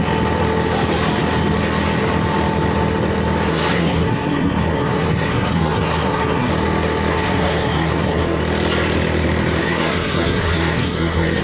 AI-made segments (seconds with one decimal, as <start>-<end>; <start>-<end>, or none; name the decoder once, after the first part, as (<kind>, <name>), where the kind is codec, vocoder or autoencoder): 3.5-6.5 (codec, SNAC); 7.1-8.4; 9.6-11.4